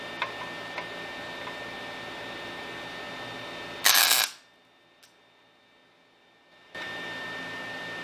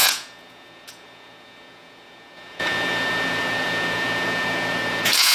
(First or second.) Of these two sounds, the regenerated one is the second